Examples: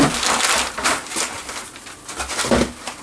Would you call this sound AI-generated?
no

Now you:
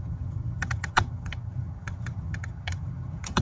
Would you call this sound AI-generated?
yes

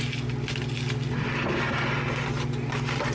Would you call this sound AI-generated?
no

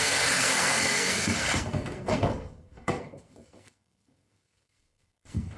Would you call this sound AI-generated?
yes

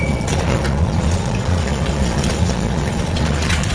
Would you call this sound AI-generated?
yes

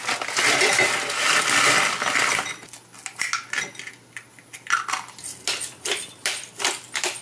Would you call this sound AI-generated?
no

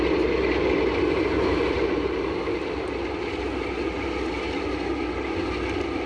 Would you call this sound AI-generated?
no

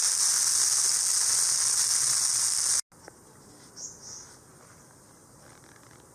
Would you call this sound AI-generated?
no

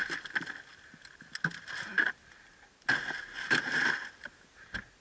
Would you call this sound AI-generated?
no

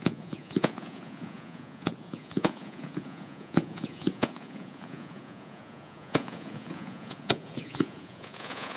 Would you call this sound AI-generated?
yes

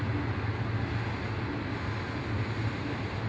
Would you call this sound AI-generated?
no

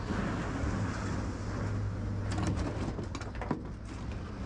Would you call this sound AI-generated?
no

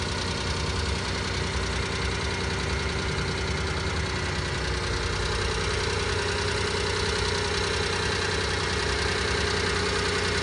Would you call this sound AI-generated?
no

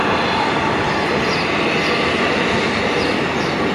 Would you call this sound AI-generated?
no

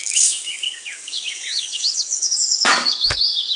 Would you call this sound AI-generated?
yes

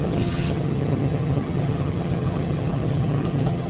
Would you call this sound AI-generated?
yes